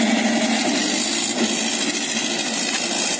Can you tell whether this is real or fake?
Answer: real